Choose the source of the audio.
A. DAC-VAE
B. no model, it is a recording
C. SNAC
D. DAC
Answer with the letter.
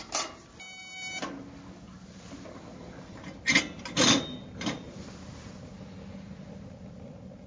B